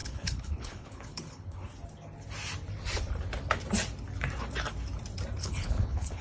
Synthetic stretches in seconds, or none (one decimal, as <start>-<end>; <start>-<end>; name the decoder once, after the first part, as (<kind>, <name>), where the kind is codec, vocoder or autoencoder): 0.0-1.7 (codec, HILCodec); 5.4-6.2